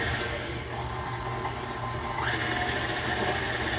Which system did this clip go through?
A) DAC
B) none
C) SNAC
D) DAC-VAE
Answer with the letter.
B